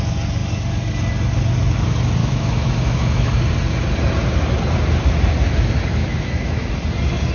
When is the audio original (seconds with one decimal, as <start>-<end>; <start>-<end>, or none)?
0.0-2.2; 3.3-6.0; 6.7-7.3